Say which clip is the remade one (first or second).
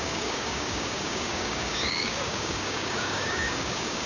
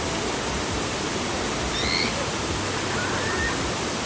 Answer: first